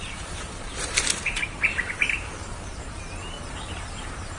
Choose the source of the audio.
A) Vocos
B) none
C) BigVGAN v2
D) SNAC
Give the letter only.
C